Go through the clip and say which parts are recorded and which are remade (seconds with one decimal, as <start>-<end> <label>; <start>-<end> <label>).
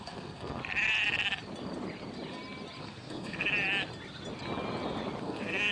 0.0-0.6 remade; 0.6-2.8 recorded; 2.8-3.5 remade; 3.5-5.2 recorded; 5.2-5.7 remade